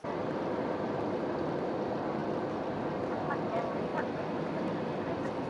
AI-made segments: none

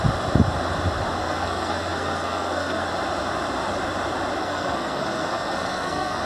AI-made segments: 1.2-2.9 (codec, SNAC); 4.4-6.2

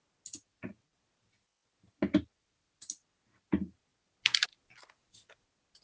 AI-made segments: none

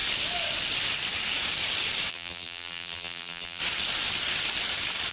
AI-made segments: 2.1-3.6 (vocoder, BigVGAN v2)

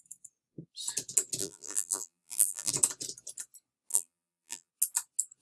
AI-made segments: 1.4-2.7 (vocoder, BigVGAN v2); 3.9-4.7

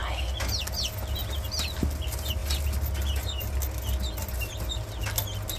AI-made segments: none